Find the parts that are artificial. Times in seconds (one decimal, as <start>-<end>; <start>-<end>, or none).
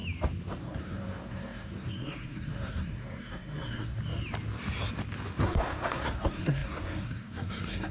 0.6-4.0; 5.4-7.9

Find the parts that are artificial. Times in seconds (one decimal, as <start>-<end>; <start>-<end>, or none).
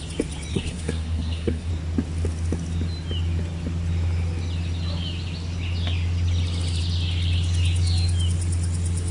0.5-1.7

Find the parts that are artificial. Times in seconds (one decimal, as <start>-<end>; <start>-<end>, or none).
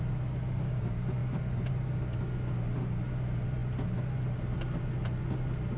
none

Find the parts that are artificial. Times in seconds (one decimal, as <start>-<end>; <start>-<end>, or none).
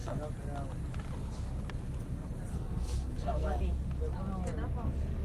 2.5-3.6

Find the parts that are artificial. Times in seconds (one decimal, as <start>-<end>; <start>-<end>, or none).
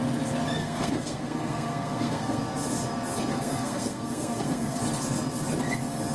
0.6-2.4; 3.3-4.8